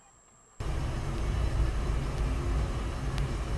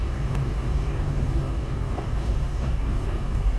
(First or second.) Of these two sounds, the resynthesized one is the second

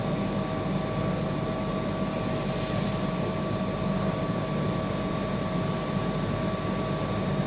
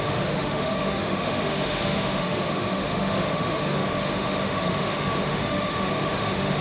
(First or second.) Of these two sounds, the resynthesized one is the second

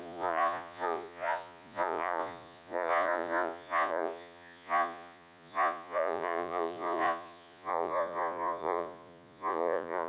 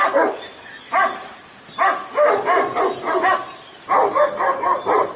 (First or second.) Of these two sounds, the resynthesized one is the first